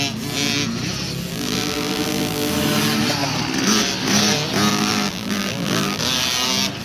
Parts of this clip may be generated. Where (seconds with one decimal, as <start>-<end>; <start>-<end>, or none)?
1.3-2.5; 4.7-6.0